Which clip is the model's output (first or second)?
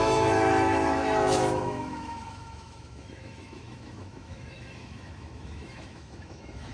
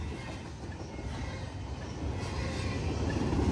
first